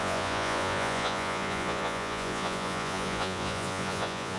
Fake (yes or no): yes